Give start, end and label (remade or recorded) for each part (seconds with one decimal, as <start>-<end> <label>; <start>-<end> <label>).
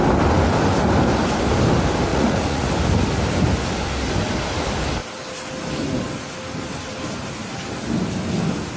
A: 0.0-2.1 recorded; 2.1-2.7 remade; 2.7-8.8 recorded